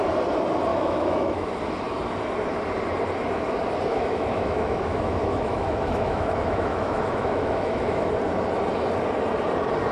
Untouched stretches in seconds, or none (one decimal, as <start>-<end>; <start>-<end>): 0.0-0.7; 1.5-3.9; 8.1-9.9